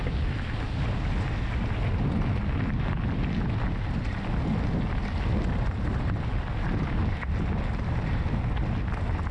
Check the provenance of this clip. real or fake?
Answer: real